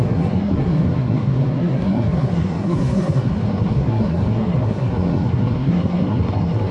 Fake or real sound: fake